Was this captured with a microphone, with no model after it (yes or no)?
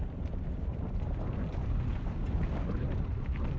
yes